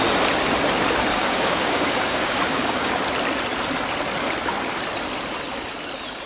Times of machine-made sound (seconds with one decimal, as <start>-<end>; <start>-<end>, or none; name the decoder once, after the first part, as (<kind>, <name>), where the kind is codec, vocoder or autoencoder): 1.1-2.9 (codec, DAC)